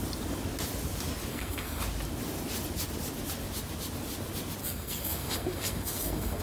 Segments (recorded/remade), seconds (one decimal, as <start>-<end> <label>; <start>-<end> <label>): 0.0-1.3 recorded; 1.3-1.8 remade; 1.8-4.6 recorded; 4.6-6.4 remade